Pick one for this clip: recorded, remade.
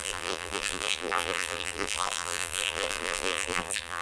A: remade